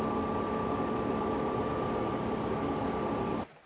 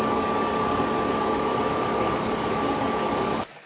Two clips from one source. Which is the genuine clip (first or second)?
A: first